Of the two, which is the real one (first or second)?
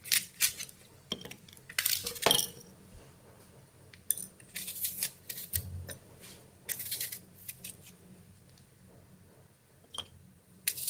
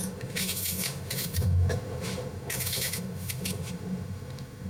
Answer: first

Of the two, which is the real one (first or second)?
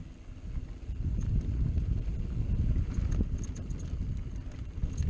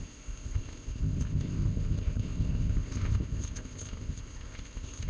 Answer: first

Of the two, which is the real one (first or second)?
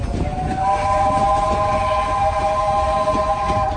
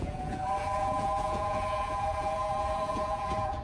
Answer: first